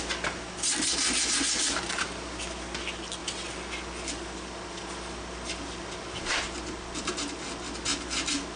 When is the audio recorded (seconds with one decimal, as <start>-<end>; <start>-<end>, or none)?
0.0-7.9